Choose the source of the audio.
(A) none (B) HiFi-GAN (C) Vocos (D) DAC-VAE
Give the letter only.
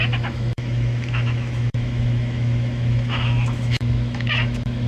D